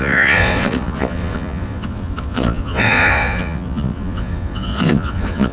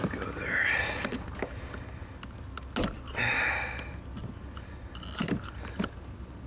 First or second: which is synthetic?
first